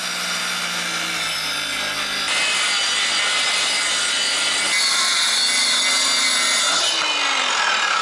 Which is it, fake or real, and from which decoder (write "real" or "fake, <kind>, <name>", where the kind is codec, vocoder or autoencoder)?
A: real